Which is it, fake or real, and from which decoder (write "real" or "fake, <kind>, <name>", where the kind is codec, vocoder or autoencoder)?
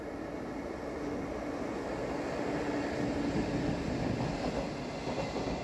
real